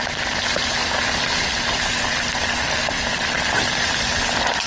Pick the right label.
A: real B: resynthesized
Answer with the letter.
A